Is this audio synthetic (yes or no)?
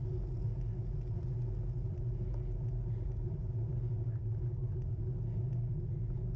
no